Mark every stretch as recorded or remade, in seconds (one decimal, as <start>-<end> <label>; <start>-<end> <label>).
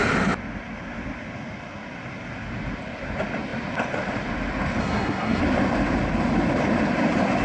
0.0-4.8 recorded; 4.8-5.4 remade; 5.4-7.4 recorded